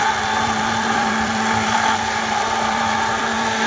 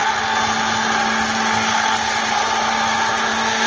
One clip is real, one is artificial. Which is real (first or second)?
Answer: second